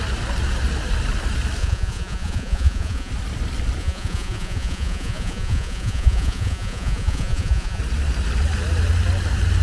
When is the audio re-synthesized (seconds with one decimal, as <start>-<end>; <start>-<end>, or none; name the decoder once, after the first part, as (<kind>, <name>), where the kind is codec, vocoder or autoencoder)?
1.6-3.1 (vocoder, Vocos); 3.8-7.8